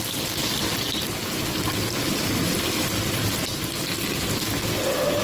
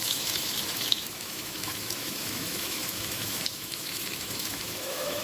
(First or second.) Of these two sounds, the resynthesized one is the second